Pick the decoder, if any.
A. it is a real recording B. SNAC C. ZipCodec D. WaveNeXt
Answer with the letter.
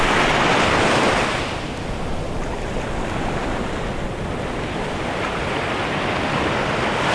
A